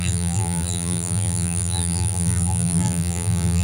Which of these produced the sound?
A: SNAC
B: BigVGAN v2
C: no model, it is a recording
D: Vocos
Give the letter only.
B